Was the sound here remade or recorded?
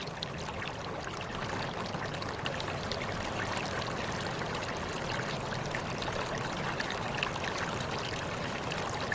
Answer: recorded